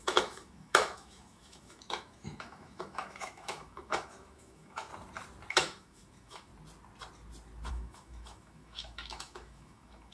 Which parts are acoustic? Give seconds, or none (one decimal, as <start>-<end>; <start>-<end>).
4.9-5.5; 6.5-7.7